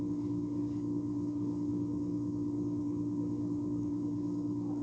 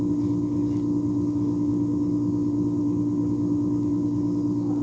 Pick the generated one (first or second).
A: first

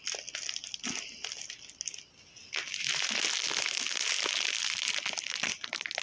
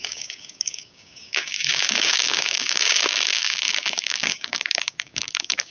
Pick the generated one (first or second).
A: second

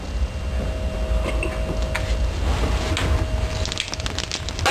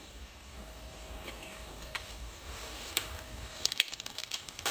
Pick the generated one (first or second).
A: second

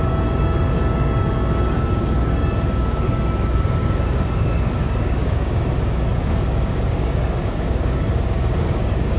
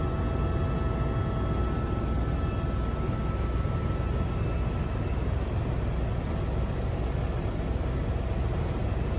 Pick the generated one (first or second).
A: first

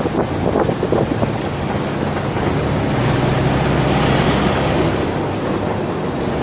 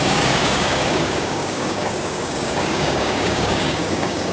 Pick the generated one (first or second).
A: second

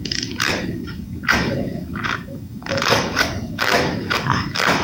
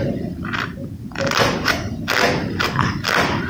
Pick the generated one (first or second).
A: first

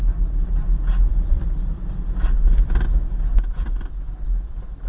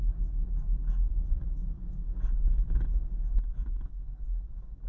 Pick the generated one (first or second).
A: second